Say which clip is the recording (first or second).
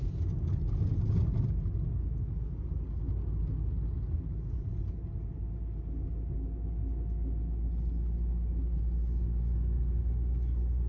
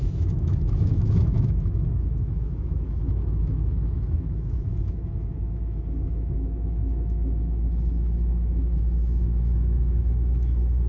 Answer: first